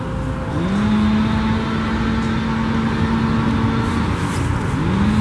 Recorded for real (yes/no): yes